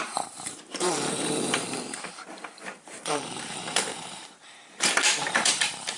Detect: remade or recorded remade